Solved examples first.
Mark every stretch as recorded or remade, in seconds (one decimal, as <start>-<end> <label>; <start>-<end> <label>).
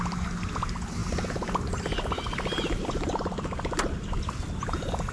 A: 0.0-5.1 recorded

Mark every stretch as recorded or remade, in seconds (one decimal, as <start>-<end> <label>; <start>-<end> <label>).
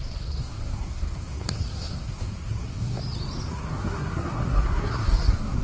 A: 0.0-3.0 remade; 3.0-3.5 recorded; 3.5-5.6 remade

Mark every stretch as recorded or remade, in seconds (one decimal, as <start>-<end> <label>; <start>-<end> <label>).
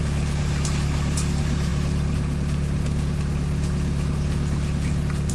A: 0.0-5.3 recorded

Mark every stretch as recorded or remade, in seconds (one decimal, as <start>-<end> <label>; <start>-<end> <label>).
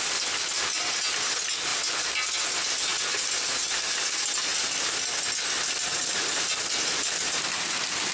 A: 0.0-2.9 recorded; 2.9-3.8 remade; 3.8-8.1 recorded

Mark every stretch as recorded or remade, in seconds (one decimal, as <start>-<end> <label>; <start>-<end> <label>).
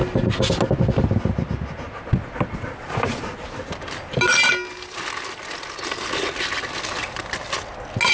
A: 0.0-8.1 recorded